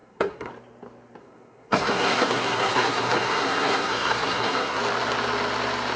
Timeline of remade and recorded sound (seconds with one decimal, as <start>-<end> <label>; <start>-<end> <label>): 0.0-0.5 remade; 0.5-1.2 recorded; 1.2-4.8 remade; 4.8-6.0 recorded